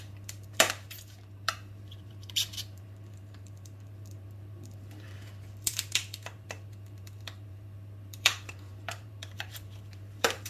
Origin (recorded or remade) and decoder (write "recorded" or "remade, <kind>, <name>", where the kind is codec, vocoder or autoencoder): remade, vocoder, BigVGAN v2